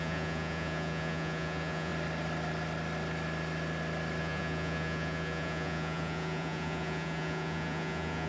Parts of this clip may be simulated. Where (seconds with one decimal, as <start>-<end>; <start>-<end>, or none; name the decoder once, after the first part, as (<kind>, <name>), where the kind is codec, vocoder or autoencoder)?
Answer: 0.0-1.9 (vocoder, Vocos); 4.2-8.3